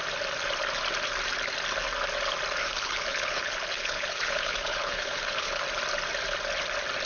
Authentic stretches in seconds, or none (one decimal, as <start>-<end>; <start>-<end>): 0.0-2.6; 5.6-7.1